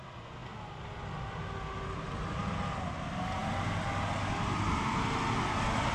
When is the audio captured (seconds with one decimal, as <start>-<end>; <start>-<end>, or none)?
0.0-5.9